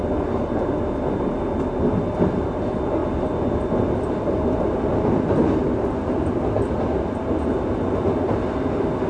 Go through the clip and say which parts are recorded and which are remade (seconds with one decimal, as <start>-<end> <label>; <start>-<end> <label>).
0.0-9.1 recorded